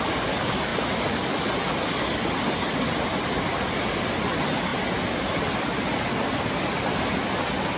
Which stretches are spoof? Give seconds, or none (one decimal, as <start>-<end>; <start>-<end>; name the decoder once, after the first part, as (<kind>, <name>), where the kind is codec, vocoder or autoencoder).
none